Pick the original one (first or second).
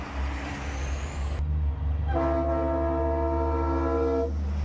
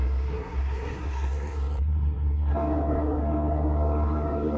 first